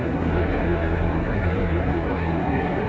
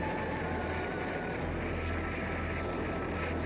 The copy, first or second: first